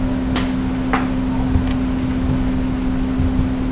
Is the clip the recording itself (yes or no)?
yes